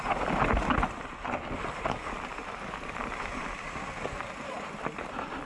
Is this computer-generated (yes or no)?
no